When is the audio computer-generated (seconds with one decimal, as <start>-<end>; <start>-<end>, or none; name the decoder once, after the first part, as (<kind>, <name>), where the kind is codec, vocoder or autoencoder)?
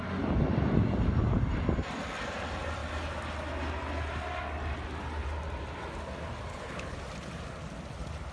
6.5-7.0 (codec, HILCodec)